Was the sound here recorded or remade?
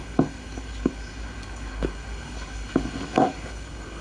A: remade